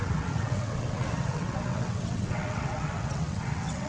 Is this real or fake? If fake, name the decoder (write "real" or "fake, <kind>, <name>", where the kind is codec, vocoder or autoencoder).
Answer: fake, vocoder, WaveNeXt